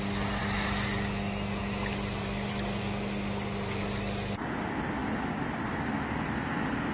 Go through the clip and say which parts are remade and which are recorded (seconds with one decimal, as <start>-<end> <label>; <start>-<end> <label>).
0.0-6.9 recorded